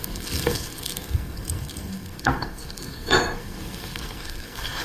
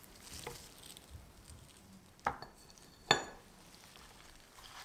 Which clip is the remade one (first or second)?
first